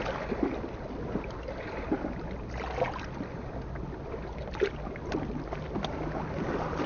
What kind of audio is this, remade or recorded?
recorded